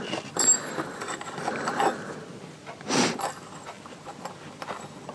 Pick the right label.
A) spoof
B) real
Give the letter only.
B